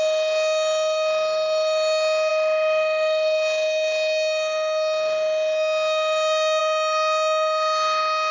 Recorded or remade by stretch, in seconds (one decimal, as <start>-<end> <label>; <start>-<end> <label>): 0.0-8.3 remade